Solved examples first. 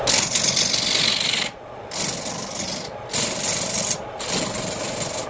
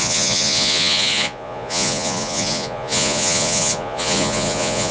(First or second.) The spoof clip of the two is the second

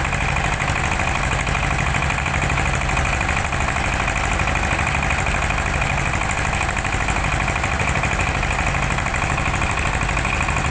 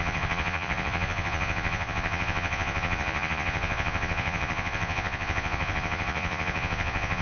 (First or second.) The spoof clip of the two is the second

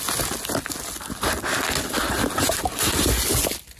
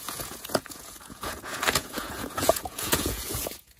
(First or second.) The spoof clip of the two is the second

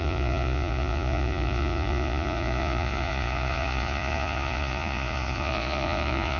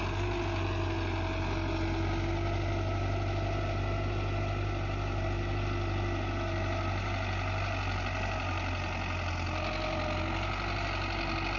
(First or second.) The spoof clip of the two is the first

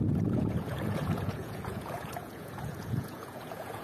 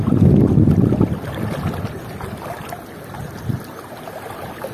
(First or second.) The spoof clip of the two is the first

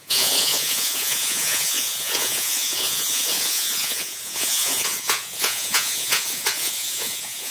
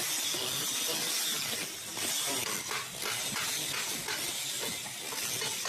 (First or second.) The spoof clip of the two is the first